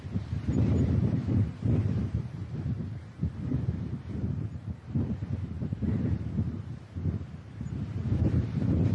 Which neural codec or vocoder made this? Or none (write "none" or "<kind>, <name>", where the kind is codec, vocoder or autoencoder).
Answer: vocoder, BigVGAN v2